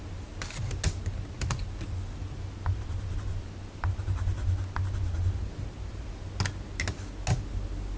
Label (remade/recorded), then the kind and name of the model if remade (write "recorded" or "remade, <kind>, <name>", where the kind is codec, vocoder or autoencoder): recorded